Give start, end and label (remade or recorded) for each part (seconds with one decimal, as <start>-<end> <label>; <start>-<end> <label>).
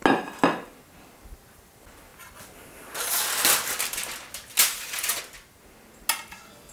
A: 0.0-6.7 recorded